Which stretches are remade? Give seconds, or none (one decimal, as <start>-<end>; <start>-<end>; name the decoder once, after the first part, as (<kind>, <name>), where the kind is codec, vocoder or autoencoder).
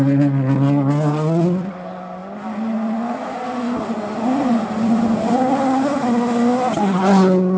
none